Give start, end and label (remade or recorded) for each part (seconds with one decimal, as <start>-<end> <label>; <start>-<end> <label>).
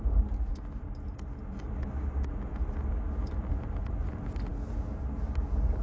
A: 0.0-5.8 recorded